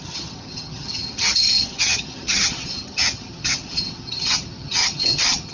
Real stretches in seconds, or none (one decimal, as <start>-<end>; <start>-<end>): none